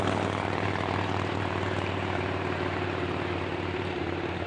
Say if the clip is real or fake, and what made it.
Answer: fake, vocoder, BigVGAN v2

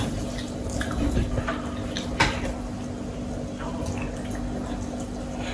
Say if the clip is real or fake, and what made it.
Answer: real